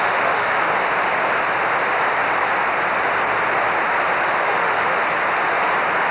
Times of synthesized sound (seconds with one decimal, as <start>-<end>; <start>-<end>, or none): 0.0-0.7; 4.4-5.0